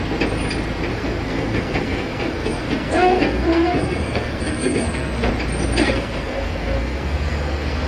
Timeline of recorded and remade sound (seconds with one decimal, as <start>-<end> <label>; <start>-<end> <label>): 0.0-0.9 recorded; 0.9-5.3 remade; 5.3-5.8 recorded; 5.8-7.9 remade